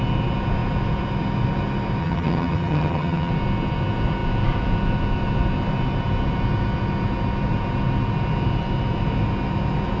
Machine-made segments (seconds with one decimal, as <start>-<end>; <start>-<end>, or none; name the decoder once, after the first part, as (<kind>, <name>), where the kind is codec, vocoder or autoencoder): 2.0-3.3 (vocoder, HiFi-GAN)